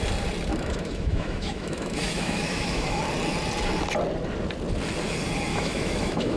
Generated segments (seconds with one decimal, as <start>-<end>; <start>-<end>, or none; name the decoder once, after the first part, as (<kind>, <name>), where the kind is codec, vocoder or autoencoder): 0.5-3.0 (autoencoder, DAC-VAE); 5.5-6.4